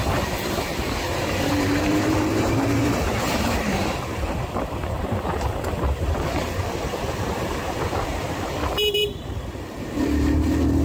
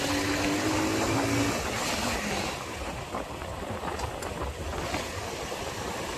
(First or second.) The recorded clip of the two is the second